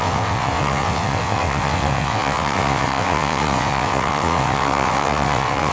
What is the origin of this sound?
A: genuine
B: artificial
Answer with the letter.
B